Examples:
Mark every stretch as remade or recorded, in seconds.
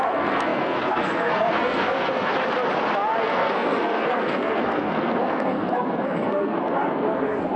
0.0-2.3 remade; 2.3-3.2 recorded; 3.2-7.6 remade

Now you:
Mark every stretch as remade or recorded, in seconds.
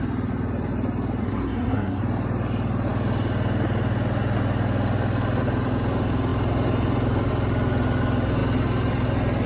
0.0-1.2 recorded; 1.2-2.0 remade; 2.0-9.5 recorded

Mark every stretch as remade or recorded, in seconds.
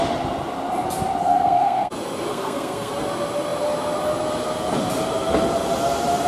0.0-1.2 recorded; 1.2-1.9 remade; 1.9-2.3 recorded; 2.3-2.9 remade; 2.9-6.3 recorded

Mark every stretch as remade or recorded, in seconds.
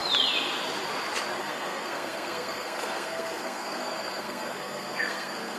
0.0-1.4 recorded; 1.4-5.6 remade